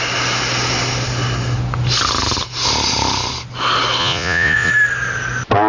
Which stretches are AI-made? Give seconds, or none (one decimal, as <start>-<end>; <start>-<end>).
4.0-4.7